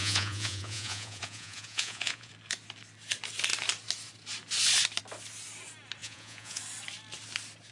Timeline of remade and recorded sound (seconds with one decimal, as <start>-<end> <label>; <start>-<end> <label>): 0.0-2.3 remade; 2.3-6.0 recorded; 6.0-6.6 remade; 6.6-7.7 recorded